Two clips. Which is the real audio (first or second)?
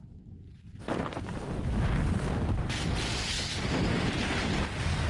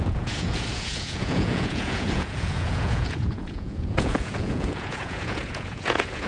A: first